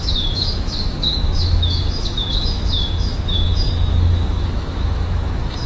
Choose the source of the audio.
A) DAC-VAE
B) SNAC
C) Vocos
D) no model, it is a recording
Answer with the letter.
A